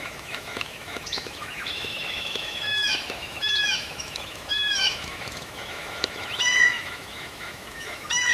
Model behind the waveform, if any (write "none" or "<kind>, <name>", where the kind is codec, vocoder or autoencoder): autoencoder, DAC-VAE